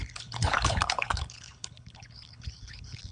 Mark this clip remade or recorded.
remade